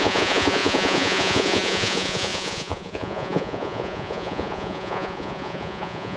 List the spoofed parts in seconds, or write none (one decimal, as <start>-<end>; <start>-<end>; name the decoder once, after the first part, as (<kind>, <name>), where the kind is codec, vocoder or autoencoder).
0.0-6.2 (vocoder, Vocos)